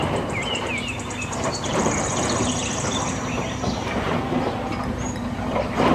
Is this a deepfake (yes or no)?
yes